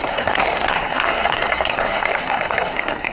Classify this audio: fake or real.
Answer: fake